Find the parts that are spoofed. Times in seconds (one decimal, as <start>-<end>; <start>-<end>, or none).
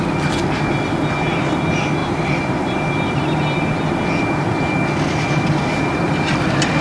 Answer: 2.0-2.5